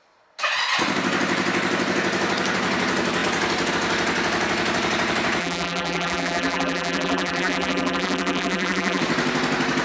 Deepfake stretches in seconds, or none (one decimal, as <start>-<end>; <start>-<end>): 5.4-9.0